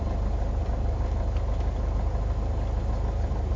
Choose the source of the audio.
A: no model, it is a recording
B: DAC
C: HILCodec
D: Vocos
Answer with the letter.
A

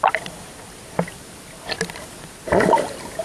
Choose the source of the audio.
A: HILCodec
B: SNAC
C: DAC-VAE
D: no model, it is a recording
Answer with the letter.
D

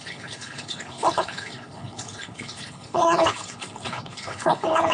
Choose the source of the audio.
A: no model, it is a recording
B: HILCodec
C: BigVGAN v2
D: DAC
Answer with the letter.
B